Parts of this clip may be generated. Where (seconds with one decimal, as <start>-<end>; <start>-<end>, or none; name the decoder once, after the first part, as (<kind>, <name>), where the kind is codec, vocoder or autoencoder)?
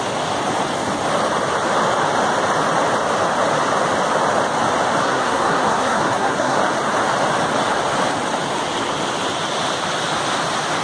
5.0-6.6 (codec, SNAC)